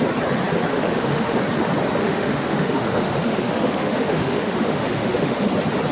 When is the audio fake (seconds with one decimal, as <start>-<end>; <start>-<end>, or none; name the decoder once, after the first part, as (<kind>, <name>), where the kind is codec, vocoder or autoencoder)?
0.7-1.4 (autoencoder, DAC-VAE); 2.0-5.5